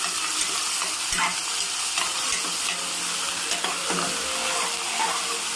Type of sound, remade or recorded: recorded